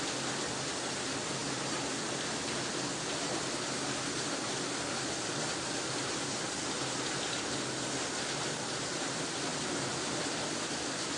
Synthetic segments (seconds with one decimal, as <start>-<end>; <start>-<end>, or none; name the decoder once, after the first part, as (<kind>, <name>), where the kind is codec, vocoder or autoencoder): none

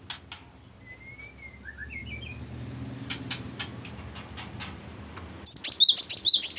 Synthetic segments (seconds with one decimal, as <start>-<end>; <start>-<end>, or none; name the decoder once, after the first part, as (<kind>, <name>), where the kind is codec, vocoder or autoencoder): none

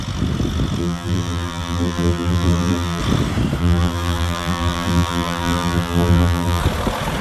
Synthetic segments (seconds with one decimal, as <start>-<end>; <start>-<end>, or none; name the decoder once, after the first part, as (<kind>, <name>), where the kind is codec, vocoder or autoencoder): 0.8-3.0 (vocoder, BigVGAN v2); 3.6-6.6